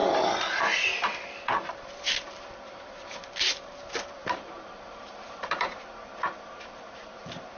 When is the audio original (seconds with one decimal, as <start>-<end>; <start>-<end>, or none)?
0.0-1.3